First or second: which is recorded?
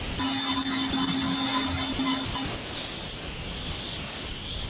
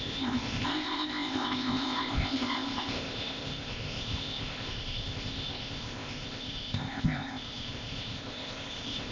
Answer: first